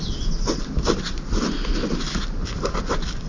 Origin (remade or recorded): recorded